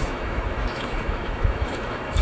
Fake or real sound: fake